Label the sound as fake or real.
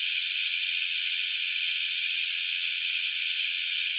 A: fake